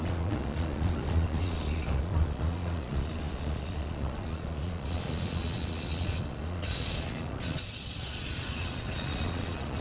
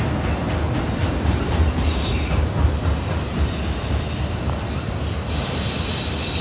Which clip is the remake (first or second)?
first